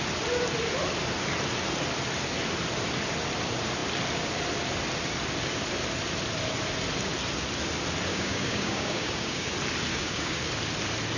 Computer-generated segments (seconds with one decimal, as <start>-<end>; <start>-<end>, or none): 8.1-9.5; 9.9-10.4